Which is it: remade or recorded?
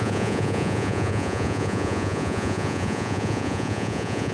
remade